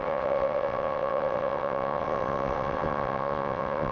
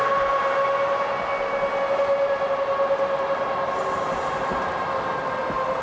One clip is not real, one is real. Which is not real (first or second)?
first